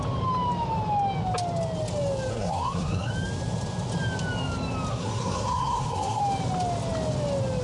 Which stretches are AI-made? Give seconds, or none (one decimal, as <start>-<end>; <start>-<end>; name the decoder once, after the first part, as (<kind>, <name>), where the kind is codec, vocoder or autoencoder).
2.3-3.1 (codec, SNAC); 4.9-6.2